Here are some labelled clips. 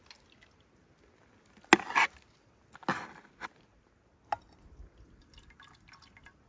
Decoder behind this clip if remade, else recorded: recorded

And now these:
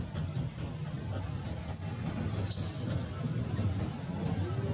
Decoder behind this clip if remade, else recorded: recorded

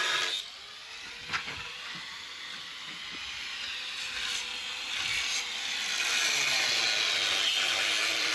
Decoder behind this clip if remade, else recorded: recorded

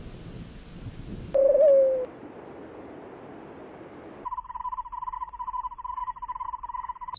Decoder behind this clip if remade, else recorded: recorded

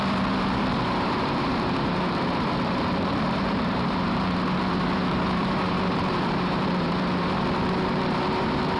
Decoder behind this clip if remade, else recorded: remade, vocoder, BigVGAN v2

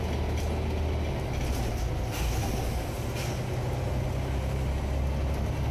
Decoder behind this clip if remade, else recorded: recorded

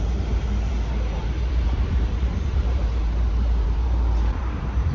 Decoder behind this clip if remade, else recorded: remade, vocoder, BigVGAN v2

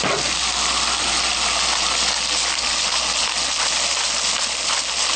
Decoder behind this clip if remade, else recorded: recorded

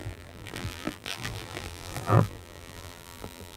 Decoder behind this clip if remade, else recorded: remade, vocoder, BigVGAN v2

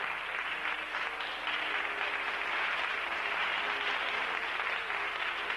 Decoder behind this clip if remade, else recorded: recorded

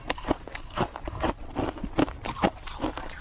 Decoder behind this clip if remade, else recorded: recorded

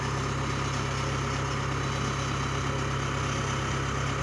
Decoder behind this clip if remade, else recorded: recorded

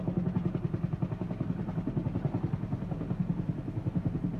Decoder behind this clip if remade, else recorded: recorded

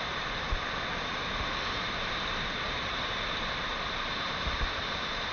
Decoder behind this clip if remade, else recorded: remade, vocoder, BigVGAN v2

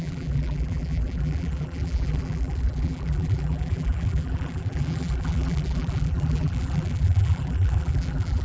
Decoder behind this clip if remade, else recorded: remade, vocoder, BigVGAN v2